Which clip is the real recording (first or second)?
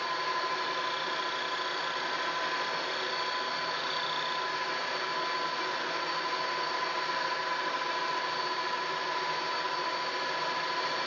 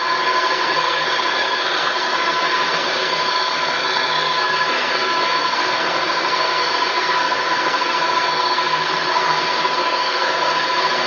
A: first